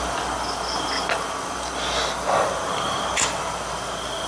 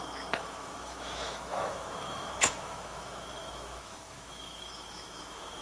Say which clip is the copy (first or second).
second